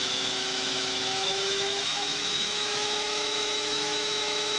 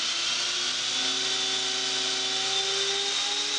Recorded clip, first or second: second